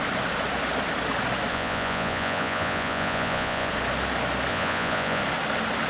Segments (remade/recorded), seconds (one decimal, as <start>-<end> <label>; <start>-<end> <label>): 0.0-1.5 recorded; 1.5-3.7 remade; 3.7-4.5 recorded; 4.5-5.2 remade; 5.2-5.9 recorded